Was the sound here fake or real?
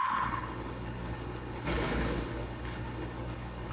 fake